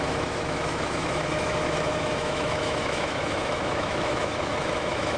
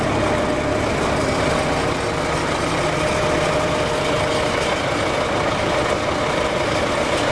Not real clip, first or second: first